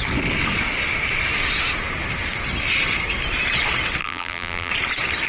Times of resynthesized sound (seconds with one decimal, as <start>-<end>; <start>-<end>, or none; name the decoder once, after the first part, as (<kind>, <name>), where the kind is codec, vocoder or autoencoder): 4.0-4.7 (vocoder, BigVGAN v2)